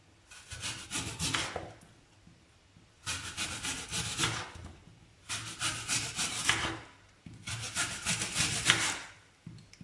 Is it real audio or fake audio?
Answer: real